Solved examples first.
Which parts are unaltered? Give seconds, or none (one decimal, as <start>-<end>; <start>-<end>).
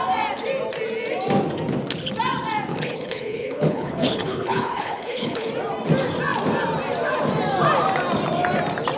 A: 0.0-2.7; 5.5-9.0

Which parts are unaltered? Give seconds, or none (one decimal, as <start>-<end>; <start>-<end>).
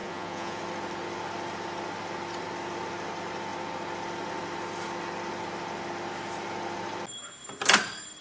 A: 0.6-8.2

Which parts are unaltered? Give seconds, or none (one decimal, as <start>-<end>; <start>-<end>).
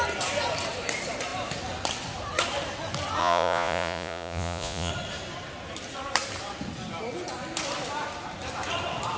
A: 0.0-3.2; 4.9-9.2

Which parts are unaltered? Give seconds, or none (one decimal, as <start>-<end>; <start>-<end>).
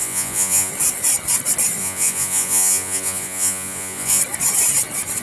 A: 0.7-1.8; 4.2-5.2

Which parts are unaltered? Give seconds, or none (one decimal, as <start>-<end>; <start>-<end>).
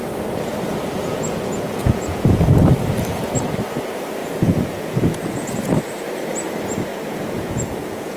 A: 0.0-1.0; 2.4-4.2; 5.7-6.9